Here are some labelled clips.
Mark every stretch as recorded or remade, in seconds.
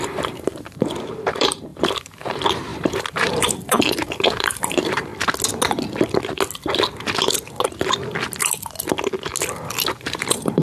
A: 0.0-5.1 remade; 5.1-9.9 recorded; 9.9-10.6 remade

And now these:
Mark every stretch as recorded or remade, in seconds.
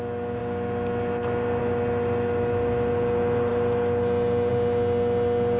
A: 0.0-5.6 recorded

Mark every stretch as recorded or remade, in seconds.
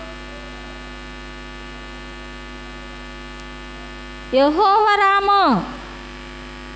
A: 0.0-4.8 recorded; 4.8-6.8 remade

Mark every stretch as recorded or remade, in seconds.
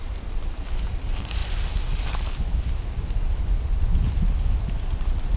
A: 0.0-1.4 remade; 1.4-4.6 recorded; 4.6-5.4 remade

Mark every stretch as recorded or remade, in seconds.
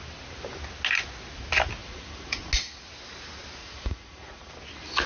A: 0.0-1.8 recorded; 1.8-2.5 remade; 2.5-3.6 recorded; 3.6-4.5 remade; 4.5-5.1 recorded